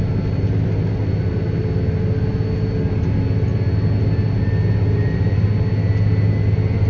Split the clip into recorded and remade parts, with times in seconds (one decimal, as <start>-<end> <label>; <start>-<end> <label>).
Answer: 0.0-6.9 recorded